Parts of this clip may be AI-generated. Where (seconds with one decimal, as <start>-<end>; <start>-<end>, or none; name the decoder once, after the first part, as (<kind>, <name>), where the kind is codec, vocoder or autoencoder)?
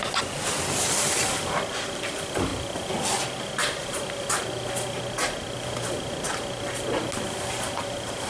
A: none